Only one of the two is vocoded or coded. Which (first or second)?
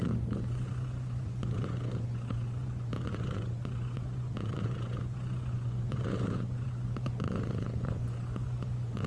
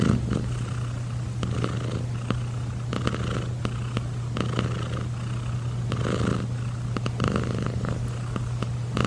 first